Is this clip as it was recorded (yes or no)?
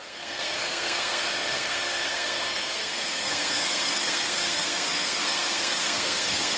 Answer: no